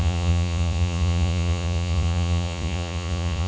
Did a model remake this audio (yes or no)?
yes